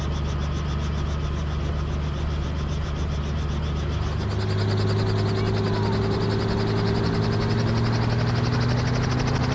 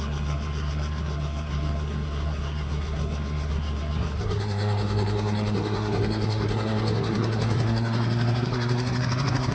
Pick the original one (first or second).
first